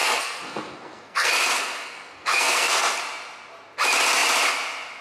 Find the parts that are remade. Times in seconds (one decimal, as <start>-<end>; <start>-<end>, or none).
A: 0.0-3.0